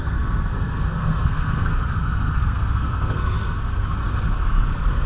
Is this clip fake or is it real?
fake